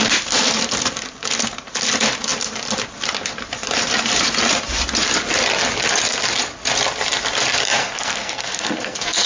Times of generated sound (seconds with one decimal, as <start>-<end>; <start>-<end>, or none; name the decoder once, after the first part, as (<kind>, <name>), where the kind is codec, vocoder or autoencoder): 7.8-9.3 (codec, SNAC)